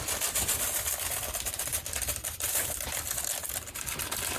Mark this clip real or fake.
real